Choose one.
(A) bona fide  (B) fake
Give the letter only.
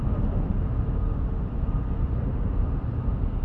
A